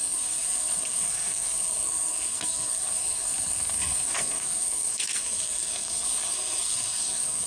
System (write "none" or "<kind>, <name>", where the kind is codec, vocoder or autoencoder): codec, SNAC